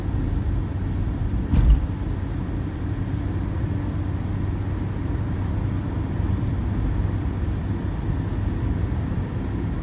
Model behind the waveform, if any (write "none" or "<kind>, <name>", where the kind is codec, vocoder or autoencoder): none